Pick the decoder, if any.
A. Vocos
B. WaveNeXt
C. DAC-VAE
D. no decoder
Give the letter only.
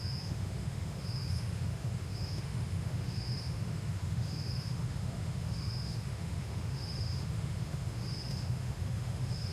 C